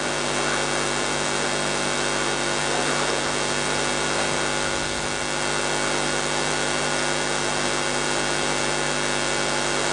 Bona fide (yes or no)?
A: yes